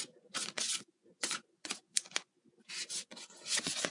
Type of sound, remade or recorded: remade